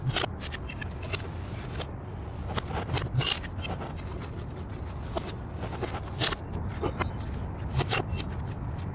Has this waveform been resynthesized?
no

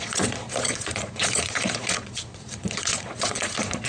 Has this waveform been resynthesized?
yes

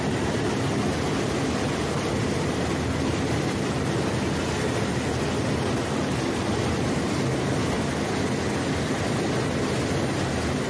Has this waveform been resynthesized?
no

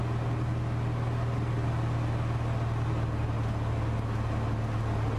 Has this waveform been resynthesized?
no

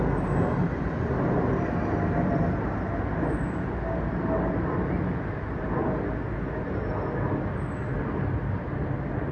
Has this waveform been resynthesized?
no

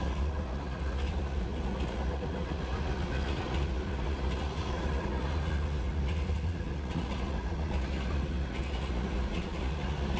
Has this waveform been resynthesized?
yes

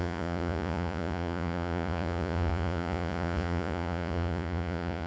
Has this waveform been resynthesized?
yes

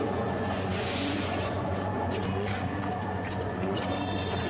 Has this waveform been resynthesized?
yes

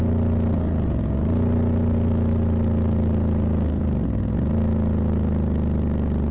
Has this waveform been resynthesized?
no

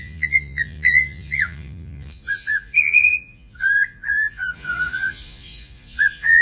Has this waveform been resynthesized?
yes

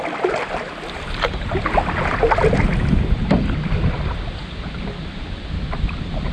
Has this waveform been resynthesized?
no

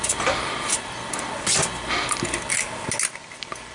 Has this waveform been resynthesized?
no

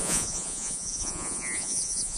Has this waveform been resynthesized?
yes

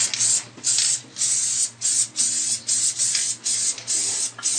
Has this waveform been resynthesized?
no